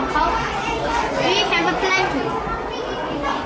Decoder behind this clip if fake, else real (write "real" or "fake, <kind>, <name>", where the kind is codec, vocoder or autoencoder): real